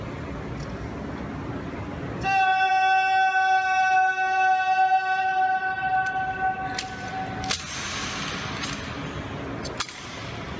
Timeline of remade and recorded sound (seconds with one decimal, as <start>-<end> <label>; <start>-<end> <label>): 0.0-10.6 recorded